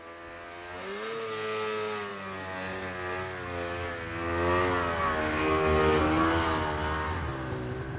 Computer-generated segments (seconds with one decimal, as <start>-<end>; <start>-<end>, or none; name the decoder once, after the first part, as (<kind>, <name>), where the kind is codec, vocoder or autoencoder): none